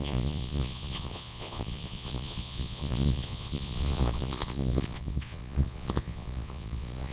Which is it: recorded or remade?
remade